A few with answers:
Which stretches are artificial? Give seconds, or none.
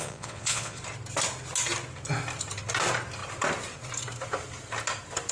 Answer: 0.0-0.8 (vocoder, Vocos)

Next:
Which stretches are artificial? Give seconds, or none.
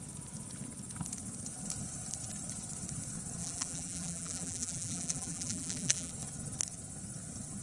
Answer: 3.4-6.1 (vocoder, BigVGAN v2)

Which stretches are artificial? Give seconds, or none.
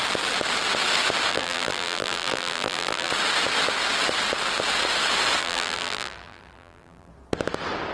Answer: 1.3-3.1 (vocoder, BigVGAN v2); 5.4-7.1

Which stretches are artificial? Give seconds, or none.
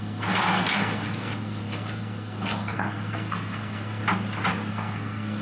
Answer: 0.0-4.0 (codec, SNAC); 4.7-5.4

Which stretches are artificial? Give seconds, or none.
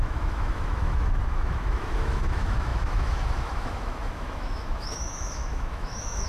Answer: 0.0-6.3 (autoencoder, DAC-VAE)